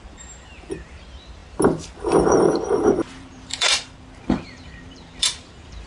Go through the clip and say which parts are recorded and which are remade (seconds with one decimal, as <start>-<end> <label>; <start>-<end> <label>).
0.0-5.9 remade

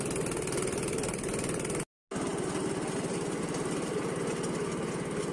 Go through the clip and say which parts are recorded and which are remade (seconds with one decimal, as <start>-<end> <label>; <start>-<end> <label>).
0.0-2.3 recorded; 2.3-4.3 remade; 4.3-5.3 recorded

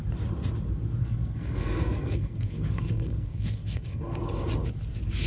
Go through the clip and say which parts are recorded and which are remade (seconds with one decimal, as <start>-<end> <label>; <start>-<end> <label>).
0.0-1.0 recorded; 1.0-4.2 remade; 4.2-5.3 recorded

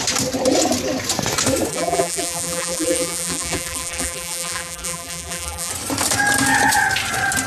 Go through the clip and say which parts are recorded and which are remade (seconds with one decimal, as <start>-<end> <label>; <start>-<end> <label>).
0.0-1.7 recorded; 1.7-5.7 remade; 5.7-7.5 recorded

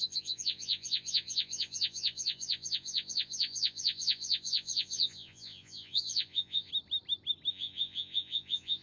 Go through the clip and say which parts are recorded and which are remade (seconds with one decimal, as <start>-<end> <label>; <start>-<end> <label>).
0.0-6.7 remade; 6.7-7.5 recorded; 7.5-8.8 remade

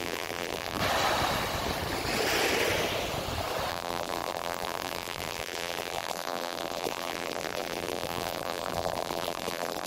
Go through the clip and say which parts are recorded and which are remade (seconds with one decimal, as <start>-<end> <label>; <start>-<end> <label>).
0.0-0.8 remade; 0.8-3.7 recorded; 3.7-9.9 remade